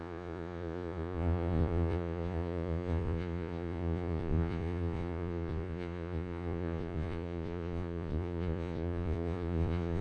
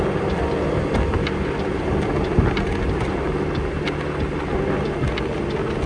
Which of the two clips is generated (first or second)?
first